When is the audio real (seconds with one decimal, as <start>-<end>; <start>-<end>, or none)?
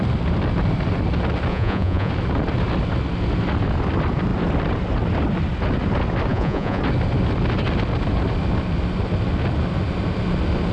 0.0-1.5; 2.1-6.3; 6.8-10.7